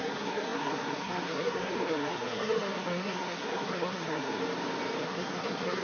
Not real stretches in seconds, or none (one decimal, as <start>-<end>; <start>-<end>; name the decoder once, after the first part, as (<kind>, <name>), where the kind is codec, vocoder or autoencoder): 0.0-4.4 (codec, SNAC); 5.0-5.8